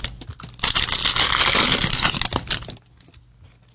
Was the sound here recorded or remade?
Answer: recorded